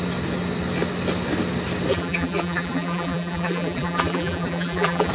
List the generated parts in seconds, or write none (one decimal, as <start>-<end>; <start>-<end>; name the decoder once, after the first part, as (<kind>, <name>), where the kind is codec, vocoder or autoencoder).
1.9-5.1 (vocoder, BigVGAN v2)